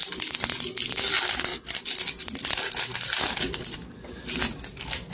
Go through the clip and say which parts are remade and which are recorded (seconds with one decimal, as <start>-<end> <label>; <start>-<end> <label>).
0.0-5.1 recorded